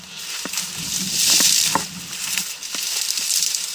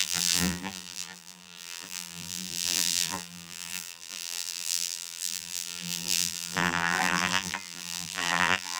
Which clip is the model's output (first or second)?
second